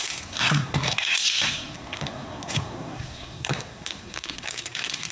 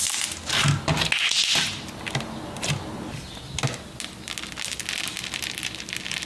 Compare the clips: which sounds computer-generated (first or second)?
first